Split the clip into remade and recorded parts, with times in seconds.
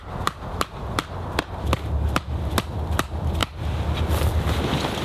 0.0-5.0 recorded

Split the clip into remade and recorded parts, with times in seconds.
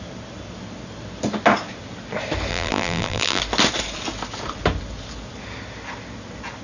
0.0-2.5 recorded; 2.5-3.4 remade; 3.4-6.6 recorded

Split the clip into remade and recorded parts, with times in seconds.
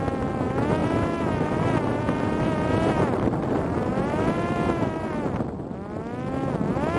0.0-0.8 recorded; 0.8-5.0 remade; 5.0-7.0 recorded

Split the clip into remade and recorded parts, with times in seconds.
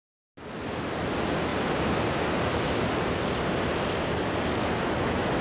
0.0-5.4 recorded